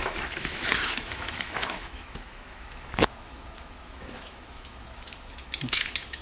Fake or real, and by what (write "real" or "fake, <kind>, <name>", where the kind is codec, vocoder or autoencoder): fake, autoencoder, DAC-VAE